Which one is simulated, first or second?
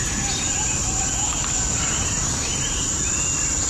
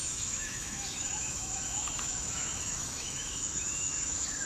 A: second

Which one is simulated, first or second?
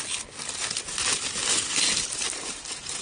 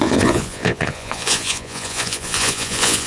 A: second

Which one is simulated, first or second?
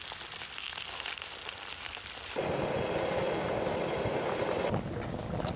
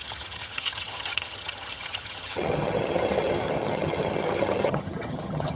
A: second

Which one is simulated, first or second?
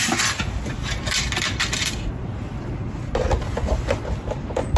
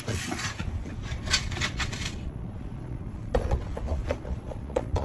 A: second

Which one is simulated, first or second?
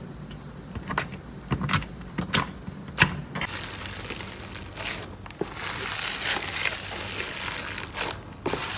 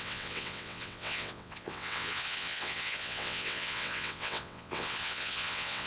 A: second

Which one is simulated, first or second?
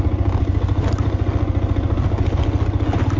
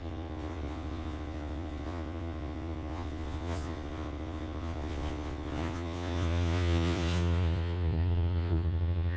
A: second